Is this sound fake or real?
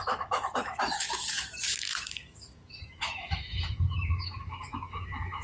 fake